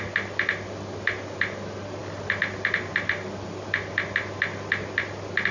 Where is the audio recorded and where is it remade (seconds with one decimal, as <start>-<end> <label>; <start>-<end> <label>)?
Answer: 0.0-5.5 recorded